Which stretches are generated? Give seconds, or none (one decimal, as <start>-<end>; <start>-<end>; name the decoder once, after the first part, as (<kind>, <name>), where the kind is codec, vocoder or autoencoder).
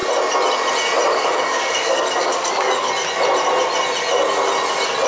1.1-2.9 (codec, DAC)